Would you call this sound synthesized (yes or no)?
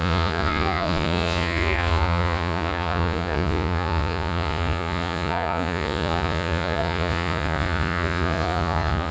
yes